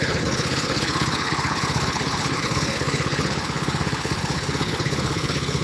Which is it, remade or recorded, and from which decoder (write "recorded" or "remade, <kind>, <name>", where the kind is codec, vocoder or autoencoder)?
remade, codec, HILCodec